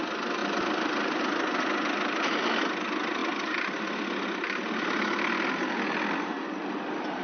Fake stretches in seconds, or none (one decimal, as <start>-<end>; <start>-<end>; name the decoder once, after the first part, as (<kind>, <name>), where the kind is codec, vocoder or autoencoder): 0.4-1.2 (vocoder, BigVGAN v2)